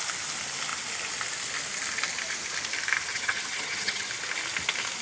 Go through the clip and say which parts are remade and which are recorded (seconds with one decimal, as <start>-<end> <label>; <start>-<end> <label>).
0.0-3.1 recorded; 3.1-4.1 remade; 4.1-5.0 recorded